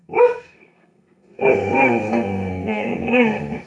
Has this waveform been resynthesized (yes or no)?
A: yes